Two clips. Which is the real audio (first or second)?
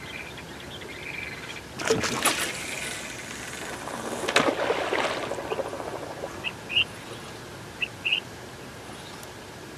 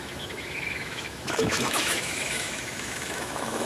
first